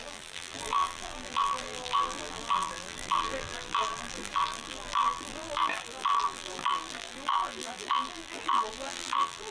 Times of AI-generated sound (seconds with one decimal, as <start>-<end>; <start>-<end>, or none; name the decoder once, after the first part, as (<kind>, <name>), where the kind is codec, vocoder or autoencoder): 0.0-9.5 (vocoder, BigVGAN v2)